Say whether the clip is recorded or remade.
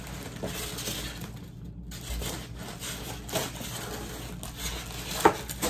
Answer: recorded